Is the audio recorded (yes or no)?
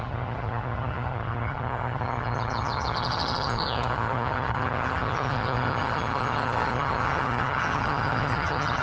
no